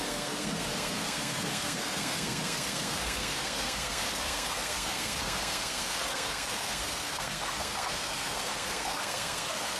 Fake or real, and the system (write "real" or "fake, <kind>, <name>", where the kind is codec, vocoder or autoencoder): fake, codec, SNAC